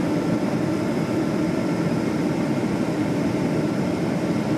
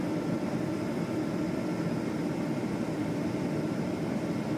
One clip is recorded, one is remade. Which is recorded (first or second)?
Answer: second